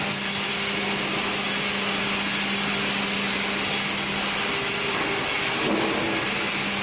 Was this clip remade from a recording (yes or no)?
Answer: no